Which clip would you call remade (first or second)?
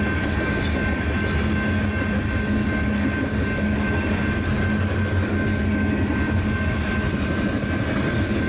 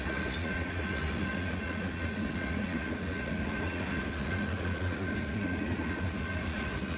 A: second